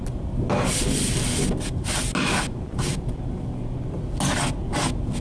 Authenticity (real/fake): real